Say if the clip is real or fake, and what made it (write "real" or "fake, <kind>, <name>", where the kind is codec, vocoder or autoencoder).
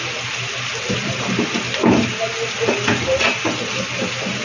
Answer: fake, vocoder, BigVGAN v2